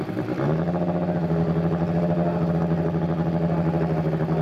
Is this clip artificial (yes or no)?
no